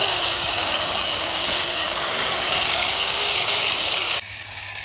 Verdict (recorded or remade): remade